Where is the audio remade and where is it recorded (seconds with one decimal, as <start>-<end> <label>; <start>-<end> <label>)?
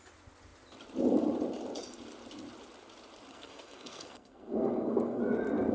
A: 0.0-3.3 recorded; 3.3-5.2 remade; 5.2-5.7 recorded